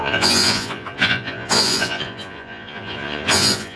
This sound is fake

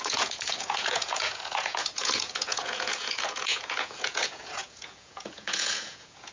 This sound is fake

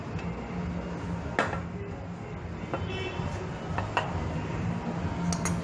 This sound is real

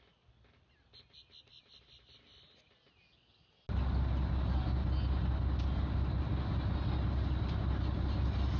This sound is real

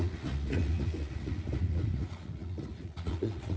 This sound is fake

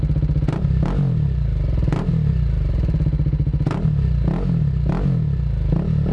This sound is real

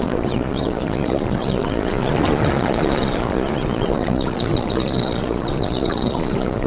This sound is fake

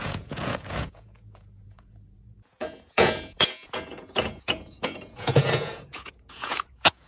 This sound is fake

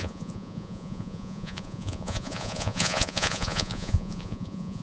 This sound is fake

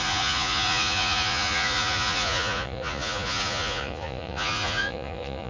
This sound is fake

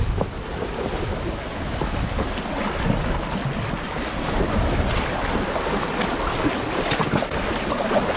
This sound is real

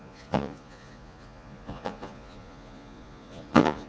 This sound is fake